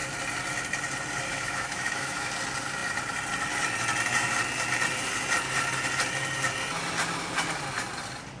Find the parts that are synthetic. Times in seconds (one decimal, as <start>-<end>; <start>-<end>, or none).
1.3-2.3